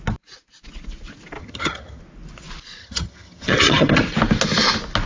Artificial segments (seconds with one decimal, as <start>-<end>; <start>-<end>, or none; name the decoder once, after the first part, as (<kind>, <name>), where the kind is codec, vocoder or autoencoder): 1.4-2.0 (vocoder, HiFi-GAN); 2.8-4.0